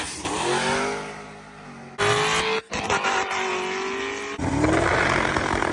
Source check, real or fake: real